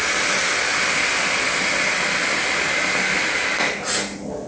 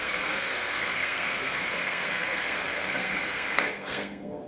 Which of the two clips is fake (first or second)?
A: second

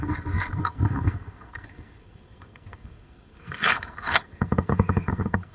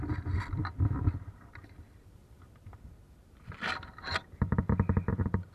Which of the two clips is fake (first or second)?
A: first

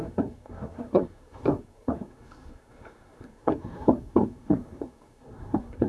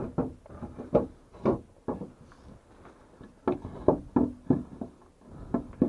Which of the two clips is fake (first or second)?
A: first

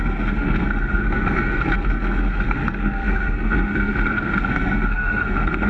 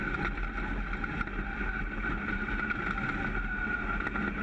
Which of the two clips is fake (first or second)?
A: first